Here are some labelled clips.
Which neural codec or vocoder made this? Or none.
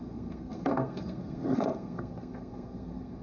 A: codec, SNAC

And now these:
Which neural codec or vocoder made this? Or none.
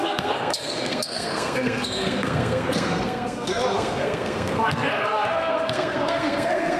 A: codec, SNAC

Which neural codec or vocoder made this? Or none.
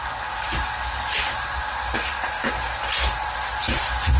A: none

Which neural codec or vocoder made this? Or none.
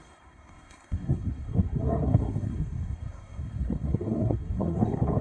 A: codec, SNAC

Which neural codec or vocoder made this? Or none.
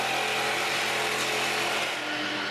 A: none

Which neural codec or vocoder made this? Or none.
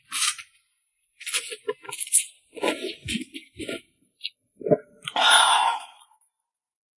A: none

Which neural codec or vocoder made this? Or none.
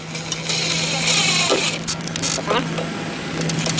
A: none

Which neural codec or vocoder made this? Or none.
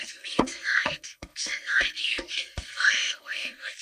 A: codec, SNAC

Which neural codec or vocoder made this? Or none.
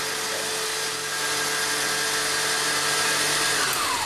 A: none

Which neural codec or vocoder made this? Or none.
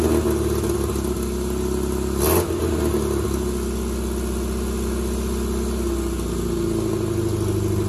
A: none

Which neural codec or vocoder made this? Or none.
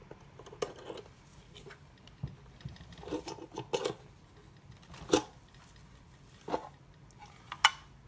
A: none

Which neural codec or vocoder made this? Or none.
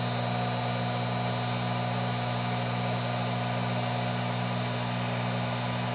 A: none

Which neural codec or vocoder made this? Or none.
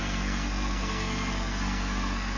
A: codec, SNAC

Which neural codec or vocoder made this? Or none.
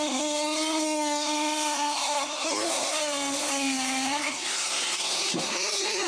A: codec, SNAC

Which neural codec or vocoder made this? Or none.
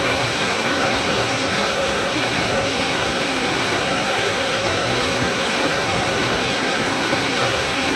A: codec, SNAC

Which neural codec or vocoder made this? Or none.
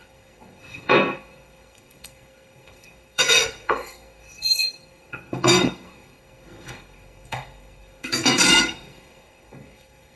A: codec, SNAC